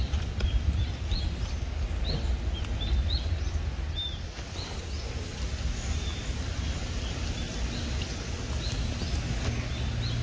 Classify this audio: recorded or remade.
recorded